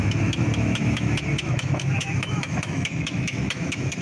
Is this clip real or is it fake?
fake